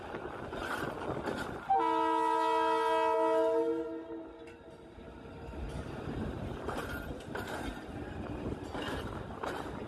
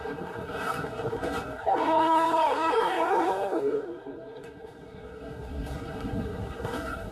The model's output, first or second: second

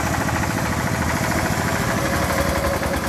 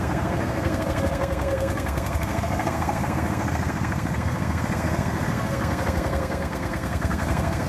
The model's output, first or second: second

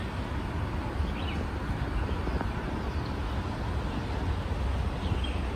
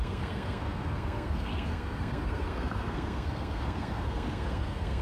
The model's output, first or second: second